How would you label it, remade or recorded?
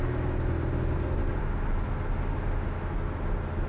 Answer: recorded